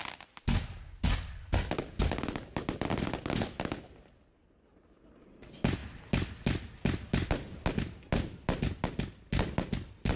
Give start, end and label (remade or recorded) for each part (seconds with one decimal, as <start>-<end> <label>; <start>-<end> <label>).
0.0-10.2 recorded